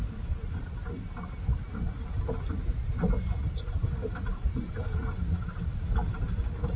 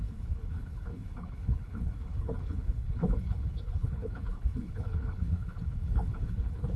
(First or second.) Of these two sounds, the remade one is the second